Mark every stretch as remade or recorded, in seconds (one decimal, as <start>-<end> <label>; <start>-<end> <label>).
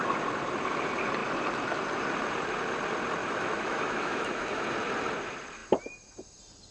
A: 0.0-3.2 recorded; 3.2-4.6 remade; 4.6-6.7 recorded